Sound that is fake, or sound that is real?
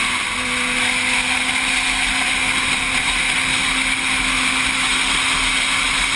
real